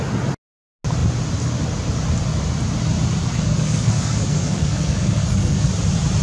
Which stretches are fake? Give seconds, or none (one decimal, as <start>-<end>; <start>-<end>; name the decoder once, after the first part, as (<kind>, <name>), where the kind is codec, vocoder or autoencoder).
3.2-5.7 (codec, SNAC)